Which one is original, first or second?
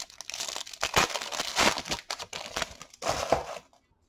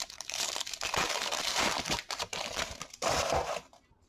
first